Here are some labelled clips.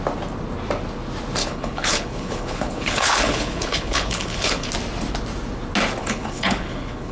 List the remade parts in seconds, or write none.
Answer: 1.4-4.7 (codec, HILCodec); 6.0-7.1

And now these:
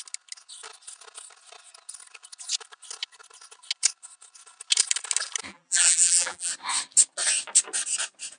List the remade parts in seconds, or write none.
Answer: 5.5-6.5 (vocoder, BigVGAN v2)

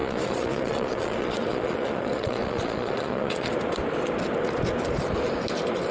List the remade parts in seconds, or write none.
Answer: 0.0-3.5 (vocoder, Vocos)

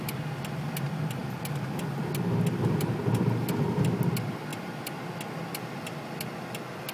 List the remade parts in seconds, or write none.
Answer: none